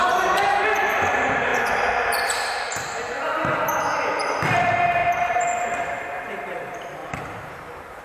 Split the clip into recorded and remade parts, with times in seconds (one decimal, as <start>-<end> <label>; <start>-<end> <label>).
0.0-8.0 remade